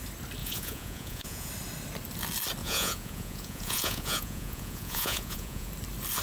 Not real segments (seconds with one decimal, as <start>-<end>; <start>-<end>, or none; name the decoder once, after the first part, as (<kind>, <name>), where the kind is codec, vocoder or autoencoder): 0.4-1.5 (vocoder, Vocos); 2.6-5.7